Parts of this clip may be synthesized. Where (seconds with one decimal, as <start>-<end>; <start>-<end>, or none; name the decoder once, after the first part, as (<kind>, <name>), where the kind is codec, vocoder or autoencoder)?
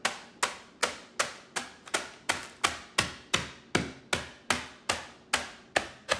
none